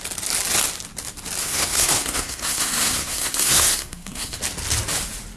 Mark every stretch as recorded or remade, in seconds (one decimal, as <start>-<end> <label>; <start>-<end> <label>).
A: 0.0-1.4 recorded; 1.4-4.4 remade; 4.4-5.4 recorded